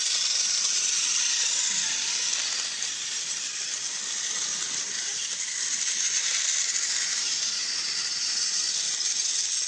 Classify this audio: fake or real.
real